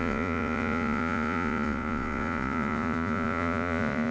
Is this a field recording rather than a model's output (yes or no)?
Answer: no